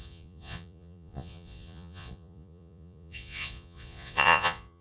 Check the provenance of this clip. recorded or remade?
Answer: remade